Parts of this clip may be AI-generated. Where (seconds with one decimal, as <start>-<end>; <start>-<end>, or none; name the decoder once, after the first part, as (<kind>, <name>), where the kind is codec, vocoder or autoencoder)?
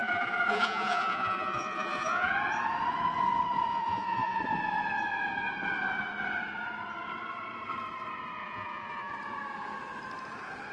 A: 0.0-2.3 (vocoder, Vocos); 3.7-4.4; 8.4-9.1